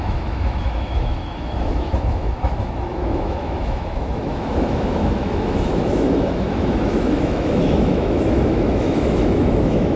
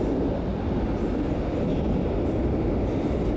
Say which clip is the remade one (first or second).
first